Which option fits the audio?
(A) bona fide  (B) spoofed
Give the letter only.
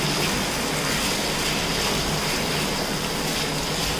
A